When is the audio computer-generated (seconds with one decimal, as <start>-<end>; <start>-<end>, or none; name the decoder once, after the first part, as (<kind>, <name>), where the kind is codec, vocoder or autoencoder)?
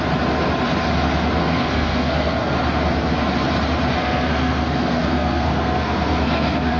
1.4-2.6 (codec, SNAC); 4.0-6.8